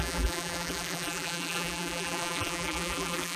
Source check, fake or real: fake